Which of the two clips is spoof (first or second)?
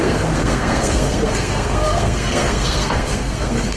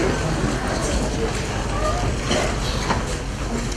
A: first